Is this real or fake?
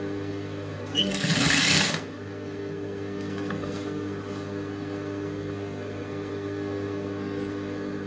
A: fake